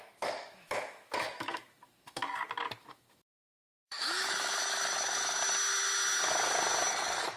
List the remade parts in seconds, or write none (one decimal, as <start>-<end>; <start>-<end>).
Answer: 0.0-2.2; 2.8-5.4; 6.9-7.4